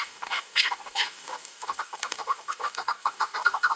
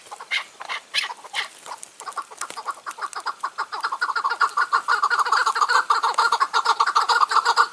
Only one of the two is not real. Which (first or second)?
first